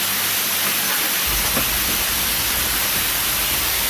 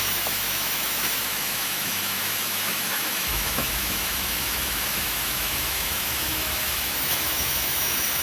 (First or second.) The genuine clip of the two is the first